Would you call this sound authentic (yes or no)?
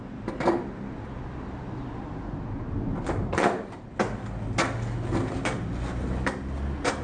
yes